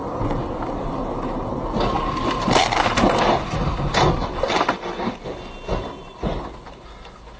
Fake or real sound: real